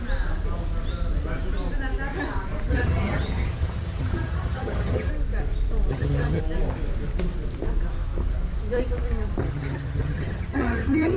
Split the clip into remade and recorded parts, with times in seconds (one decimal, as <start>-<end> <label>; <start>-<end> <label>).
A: 0.0-2.7 recorded; 2.7-5.1 remade; 5.1-5.9 recorded; 5.9-6.4 remade; 6.4-9.4 recorded; 9.4-11.2 remade

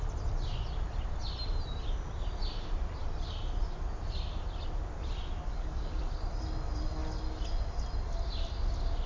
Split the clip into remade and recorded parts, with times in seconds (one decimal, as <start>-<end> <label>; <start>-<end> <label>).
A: 0.0-5.5 recorded; 5.5-6.2 remade; 6.2-9.1 recorded

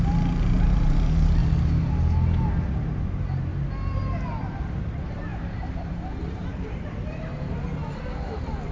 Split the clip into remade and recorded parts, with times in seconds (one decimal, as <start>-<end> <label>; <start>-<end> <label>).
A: 0.0-1.4 remade; 1.4-2.7 recorded; 2.7-3.5 remade; 3.5-4.8 recorded; 4.8-8.7 remade

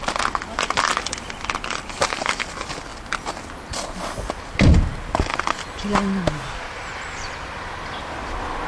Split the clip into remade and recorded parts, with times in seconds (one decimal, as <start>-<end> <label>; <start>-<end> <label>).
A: 0.0-8.7 recorded

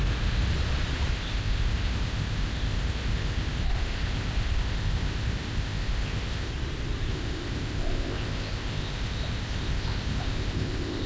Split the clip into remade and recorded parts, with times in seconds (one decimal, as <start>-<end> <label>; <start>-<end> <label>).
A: 0.0-0.5 remade; 0.5-1.1 recorded; 1.1-6.5 remade; 6.5-7.1 recorded; 7.1-11.1 remade

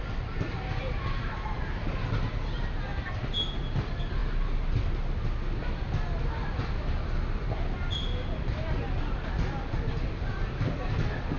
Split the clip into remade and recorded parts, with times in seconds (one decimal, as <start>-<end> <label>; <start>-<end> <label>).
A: 0.0-11.4 recorded

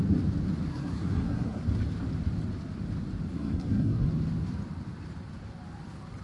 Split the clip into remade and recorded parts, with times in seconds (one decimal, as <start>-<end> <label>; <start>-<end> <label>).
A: 0.0-0.7 recorded; 0.7-1.6 remade; 1.6-3.3 recorded; 3.3-4.1 remade; 4.1-6.2 recorded

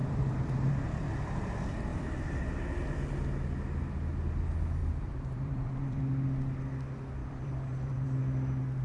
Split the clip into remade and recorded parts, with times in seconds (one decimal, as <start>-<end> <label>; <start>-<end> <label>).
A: 0.0-0.7 remade; 0.7-1.9 recorded; 1.9-2.4 remade; 2.4-4.8 recorded; 4.8-6.0 remade; 6.0-7.2 recorded; 7.2-8.2 remade; 8.2-8.8 recorded